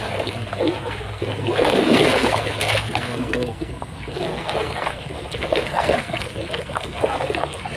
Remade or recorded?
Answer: remade